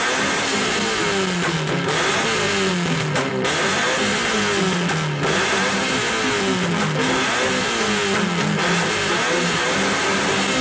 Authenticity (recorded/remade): recorded